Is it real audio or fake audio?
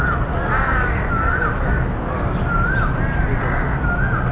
real